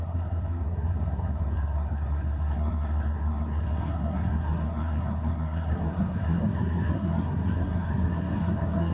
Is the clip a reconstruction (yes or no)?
yes